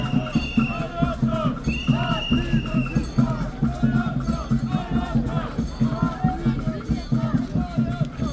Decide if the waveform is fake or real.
real